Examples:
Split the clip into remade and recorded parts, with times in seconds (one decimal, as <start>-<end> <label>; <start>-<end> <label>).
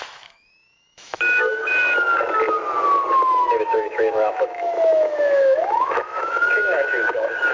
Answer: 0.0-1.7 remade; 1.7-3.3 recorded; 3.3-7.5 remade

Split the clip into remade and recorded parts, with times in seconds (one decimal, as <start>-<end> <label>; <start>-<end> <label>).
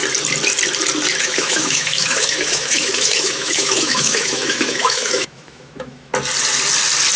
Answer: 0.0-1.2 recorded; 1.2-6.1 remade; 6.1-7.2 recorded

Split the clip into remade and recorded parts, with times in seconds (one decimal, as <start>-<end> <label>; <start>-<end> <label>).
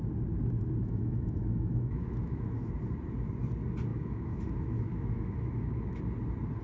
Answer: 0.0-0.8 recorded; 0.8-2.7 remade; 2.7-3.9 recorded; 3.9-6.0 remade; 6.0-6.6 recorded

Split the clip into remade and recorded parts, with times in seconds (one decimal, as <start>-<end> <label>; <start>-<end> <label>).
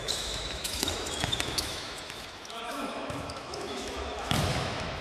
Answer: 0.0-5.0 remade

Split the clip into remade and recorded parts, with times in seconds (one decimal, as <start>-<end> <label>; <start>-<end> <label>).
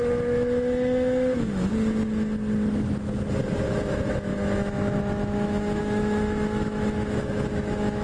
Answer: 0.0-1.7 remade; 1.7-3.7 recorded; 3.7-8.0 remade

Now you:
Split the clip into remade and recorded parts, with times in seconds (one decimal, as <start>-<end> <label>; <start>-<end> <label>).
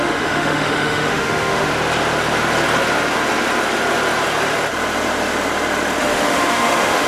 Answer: 0.0-1.7 remade; 1.7-6.0 recorded; 6.0-7.1 remade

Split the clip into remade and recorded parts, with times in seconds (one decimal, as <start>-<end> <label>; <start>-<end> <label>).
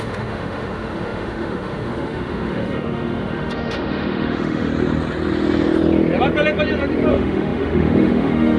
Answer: 0.0-4.7 remade; 4.7-7.1 recorded; 7.1-8.6 remade